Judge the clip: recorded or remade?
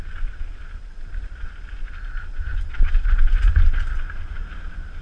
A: recorded